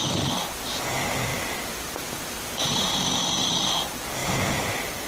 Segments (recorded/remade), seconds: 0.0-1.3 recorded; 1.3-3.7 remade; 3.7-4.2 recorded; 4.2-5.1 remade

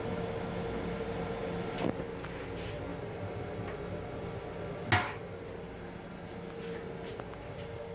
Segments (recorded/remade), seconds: 0.0-7.9 recorded

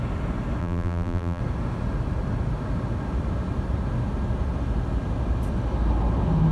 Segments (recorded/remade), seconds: 0.0-0.6 recorded; 0.6-1.4 remade; 1.4-6.5 recorded

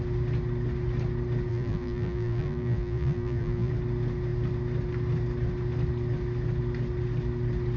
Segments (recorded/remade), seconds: 0.0-1.5 recorded; 1.5-3.7 remade; 3.7-7.8 recorded

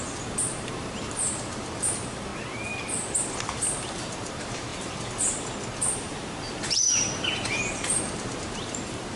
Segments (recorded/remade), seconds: 0.0-2.3 remade; 2.3-3.4 recorded; 3.4-4.7 remade; 4.7-5.8 recorded; 5.8-9.2 remade

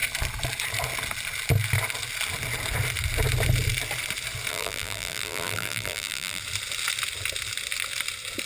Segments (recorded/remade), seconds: 0.0-4.5 recorded; 4.5-6.4 remade; 6.4-8.5 recorded